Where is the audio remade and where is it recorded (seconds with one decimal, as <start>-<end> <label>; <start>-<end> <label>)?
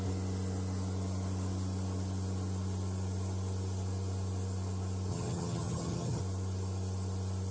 0.0-5.1 recorded; 5.1-6.2 remade; 6.2-7.5 recorded